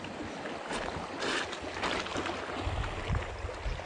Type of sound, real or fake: real